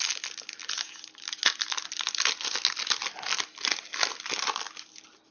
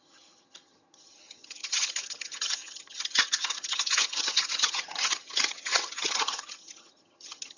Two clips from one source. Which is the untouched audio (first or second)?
first